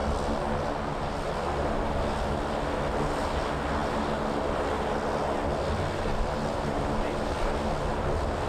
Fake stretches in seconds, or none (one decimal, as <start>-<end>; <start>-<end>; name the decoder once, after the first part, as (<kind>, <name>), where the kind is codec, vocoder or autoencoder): none

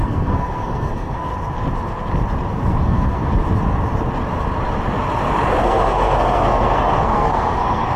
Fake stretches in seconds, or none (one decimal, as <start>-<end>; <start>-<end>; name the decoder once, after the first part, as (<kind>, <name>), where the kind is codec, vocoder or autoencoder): 0.0-1.3 (codec, SNAC); 2.5-3.3; 5.6-8.0

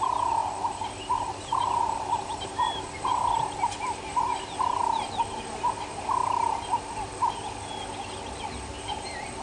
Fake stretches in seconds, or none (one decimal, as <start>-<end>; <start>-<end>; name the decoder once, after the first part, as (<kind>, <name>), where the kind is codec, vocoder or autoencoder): 0.0-0.4 (vocoder, BigVGAN v2); 1.2-4.8; 5.4-6.2; 8.4-9.4

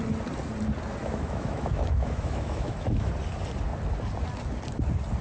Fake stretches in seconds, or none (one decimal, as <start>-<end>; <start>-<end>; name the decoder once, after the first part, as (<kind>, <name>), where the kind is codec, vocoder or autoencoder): 1.0-3.1 (autoencoder, DAC-VAE)

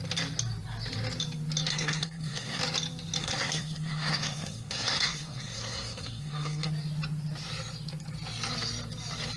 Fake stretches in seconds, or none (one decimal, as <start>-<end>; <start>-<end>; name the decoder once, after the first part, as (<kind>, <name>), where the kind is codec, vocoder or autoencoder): 1.7-2.6 (codec, SNAC); 3.2-6.7

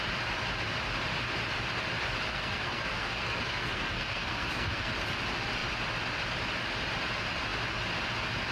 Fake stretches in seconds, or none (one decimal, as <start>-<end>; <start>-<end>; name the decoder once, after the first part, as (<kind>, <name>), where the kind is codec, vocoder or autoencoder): 2.3-4.9 (codec, SNAC)